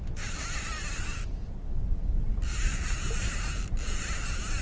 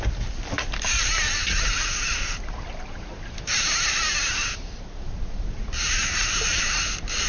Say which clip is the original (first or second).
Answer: first